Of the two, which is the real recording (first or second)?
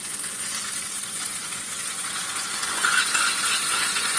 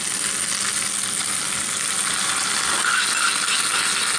second